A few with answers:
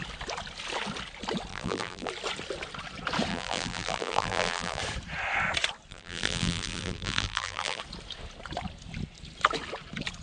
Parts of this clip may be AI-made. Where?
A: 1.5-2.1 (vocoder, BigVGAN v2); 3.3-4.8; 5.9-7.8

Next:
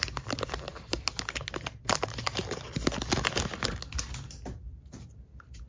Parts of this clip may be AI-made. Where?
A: none

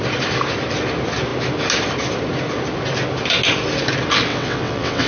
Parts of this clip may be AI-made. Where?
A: 4.3-5.1 (vocoder, WaveNeXt)

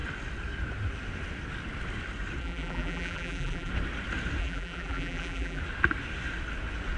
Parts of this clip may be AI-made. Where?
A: 2.4-3.7 (vocoder, BigVGAN v2); 4.4-5.6

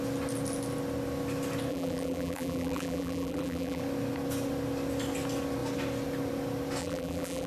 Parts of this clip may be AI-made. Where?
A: 1.7-3.8 (vocoder, BigVGAN v2); 6.8-7.5

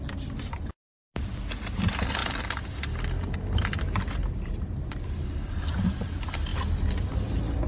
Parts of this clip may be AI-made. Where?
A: none

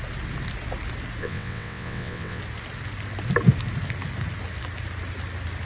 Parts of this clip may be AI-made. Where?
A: 1.2-2.4 (vocoder, WaveNeXt)